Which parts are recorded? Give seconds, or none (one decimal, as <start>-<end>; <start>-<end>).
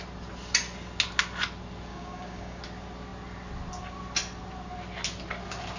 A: 0.0-1.9; 2.6-5.8